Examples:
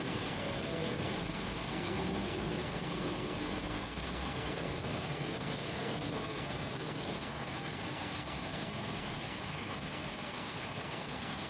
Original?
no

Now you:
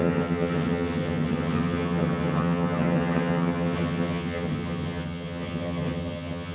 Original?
no